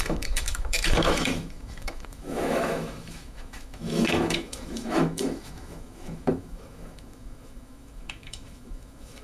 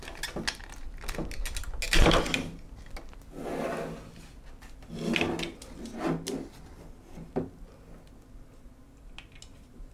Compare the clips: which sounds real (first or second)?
second